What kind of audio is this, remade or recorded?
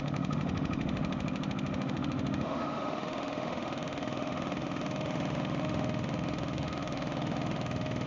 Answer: remade